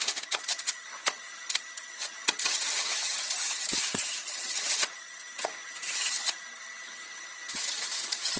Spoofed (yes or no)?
yes